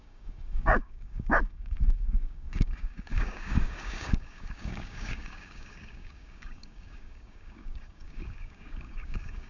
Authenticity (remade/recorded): remade